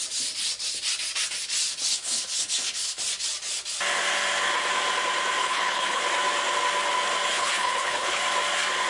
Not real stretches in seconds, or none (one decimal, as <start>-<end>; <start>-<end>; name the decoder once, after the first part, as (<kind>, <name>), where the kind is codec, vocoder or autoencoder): 1.9-3.0 (codec, HILCodec); 5.4-6.0; 7.3-8.2